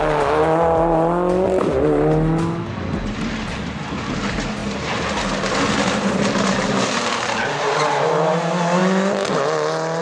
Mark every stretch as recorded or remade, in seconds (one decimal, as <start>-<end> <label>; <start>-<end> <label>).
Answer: 0.0-10.0 recorded

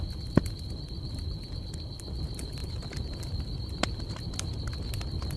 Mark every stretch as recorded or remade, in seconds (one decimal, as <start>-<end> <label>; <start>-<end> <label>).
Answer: 0.0-2.6 recorded; 2.6-4.1 remade; 4.1-5.4 recorded

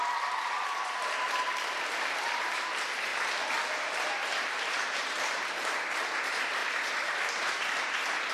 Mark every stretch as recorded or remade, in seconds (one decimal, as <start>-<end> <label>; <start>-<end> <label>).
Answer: 0.0-6.6 recorded; 6.6-8.3 remade

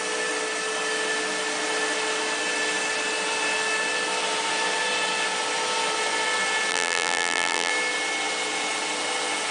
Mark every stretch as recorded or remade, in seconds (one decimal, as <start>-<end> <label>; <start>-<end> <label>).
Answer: 0.0-6.7 recorded; 6.7-7.7 remade; 7.7-9.5 recorded

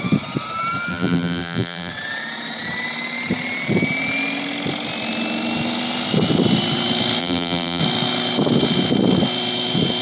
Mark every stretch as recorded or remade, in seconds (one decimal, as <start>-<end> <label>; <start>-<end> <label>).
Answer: 0.0-0.9 recorded; 0.9-1.9 remade; 1.9-7.2 recorded; 7.2-7.8 remade; 7.8-10.0 recorded

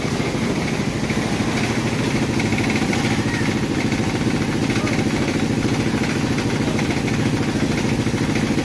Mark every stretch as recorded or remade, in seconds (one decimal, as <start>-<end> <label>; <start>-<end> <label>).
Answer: 0.0-2.5 recorded; 2.5-4.5 remade; 4.5-8.6 recorded

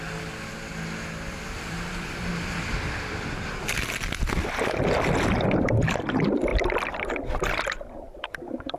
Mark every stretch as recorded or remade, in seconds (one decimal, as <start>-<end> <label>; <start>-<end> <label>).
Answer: 0.0-1.3 recorded; 1.3-8.8 remade

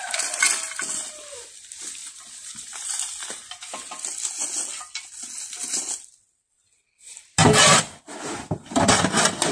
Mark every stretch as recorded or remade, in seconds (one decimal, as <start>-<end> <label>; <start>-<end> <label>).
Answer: 0.0-2.0 recorded; 2.0-3.0 remade; 3.0-9.5 recorded